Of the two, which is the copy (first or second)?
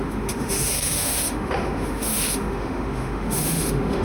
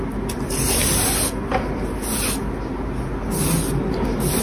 first